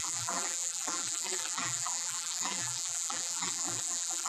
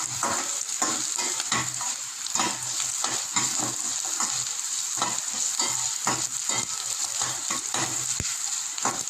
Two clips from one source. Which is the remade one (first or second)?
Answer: first